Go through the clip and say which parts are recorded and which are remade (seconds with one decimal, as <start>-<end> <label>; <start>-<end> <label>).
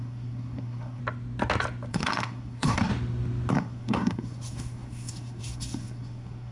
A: 0.0-1.0 remade; 1.0-1.9 recorded; 1.9-2.9 remade; 2.9-3.5 recorded; 3.5-6.5 remade